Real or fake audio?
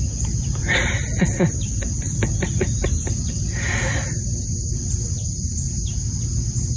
real